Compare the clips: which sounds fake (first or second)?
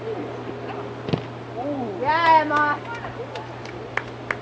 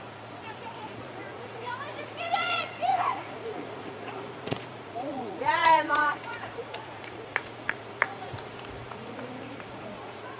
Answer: second